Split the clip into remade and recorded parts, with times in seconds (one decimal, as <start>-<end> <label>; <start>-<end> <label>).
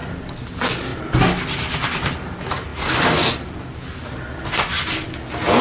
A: 0.0-5.6 recorded